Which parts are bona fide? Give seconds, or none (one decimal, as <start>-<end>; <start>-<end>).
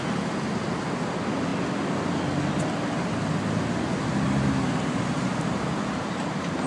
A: 0.0-6.7